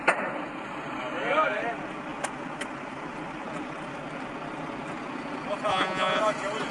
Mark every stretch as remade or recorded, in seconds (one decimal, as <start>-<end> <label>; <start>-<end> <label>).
0.0-5.7 recorded; 5.7-6.2 remade; 6.2-6.7 recorded